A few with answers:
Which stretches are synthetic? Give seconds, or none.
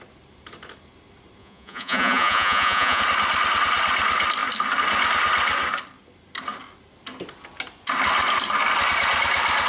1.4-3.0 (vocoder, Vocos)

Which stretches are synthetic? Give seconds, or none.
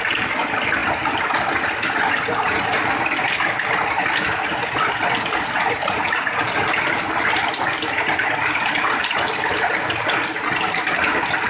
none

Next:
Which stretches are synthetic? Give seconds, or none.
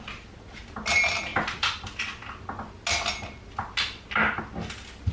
none